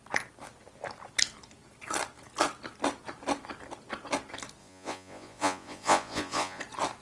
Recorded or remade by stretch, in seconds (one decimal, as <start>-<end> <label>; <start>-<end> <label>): 0.0-4.6 recorded; 4.6-6.6 remade; 6.6-7.0 recorded